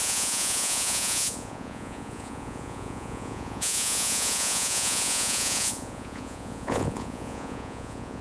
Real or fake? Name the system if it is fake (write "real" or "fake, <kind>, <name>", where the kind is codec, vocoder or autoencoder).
fake, vocoder, Vocos